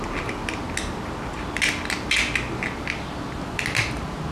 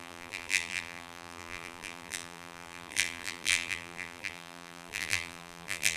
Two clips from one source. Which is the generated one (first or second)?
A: second